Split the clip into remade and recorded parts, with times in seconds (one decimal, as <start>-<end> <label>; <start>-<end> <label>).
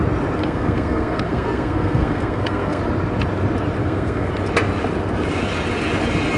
0.0-0.4 recorded; 0.4-2.8 remade; 2.8-3.8 recorded; 3.8-4.3 remade; 4.3-6.4 recorded